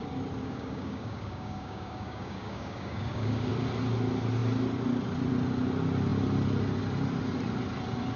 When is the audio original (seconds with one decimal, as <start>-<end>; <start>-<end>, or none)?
0.0-0.4; 3.5-8.2